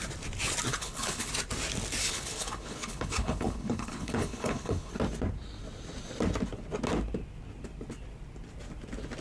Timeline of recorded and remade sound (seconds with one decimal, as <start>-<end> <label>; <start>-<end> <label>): 0.0-0.7 recorded; 0.7-1.3 remade; 1.3-2.0 recorded; 2.0-4.9 remade; 4.9-9.2 recorded